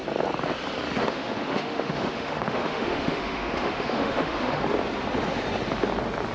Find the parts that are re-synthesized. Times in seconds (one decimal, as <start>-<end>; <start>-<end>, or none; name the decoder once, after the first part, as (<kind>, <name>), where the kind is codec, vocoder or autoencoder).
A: 1.0-4.6 (autoencoder, DAC-VAE)